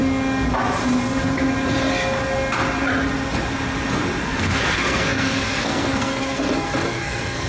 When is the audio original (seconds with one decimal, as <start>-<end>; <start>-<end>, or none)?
0.0-4.2